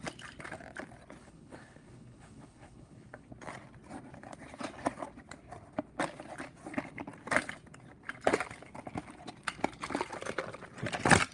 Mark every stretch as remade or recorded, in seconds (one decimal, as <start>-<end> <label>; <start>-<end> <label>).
0.0-1.2 recorded; 1.2-3.3 remade; 3.3-11.3 recorded

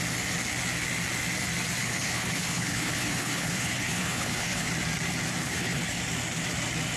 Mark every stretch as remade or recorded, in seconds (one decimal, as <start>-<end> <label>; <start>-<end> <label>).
0.0-1.8 recorded; 1.8-4.7 remade; 4.7-5.4 recorded; 5.4-6.0 remade; 6.0-7.0 recorded

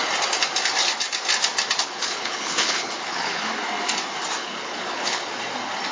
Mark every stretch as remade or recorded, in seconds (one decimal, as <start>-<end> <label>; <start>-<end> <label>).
0.0-1.8 recorded; 1.8-3.5 remade; 3.5-4.4 recorded; 4.4-5.2 remade; 5.2-5.9 recorded

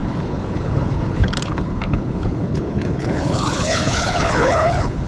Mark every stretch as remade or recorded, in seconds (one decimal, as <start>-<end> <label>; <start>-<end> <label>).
0.0-5.1 remade

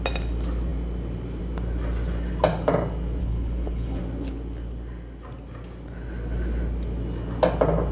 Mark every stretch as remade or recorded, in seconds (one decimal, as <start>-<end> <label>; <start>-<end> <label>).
0.0-3.2 recorded; 3.2-4.0 remade; 4.0-7.9 recorded

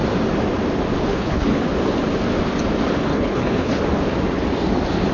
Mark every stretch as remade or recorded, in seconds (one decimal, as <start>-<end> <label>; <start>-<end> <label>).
0.0-1.1 recorded; 1.1-1.6 remade; 1.6-3.1 recorded; 3.1-3.8 remade; 3.8-5.1 recorded